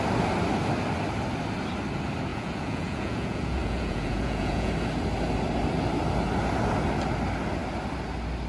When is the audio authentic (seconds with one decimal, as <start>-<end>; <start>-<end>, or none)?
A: 0.0-2.3; 4.7-8.5